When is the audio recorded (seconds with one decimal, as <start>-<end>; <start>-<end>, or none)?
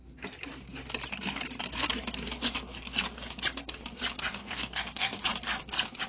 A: 0.0-4.4; 5.2-6.1